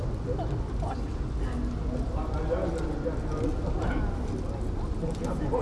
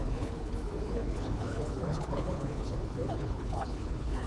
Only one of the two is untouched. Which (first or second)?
first